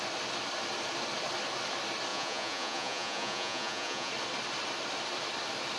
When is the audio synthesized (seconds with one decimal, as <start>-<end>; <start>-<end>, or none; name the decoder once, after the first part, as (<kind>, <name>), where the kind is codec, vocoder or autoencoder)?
2.1-4.1 (vocoder, Vocos)